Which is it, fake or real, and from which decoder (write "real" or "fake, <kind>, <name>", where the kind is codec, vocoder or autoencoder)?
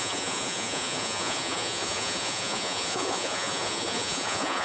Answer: fake, vocoder, Vocos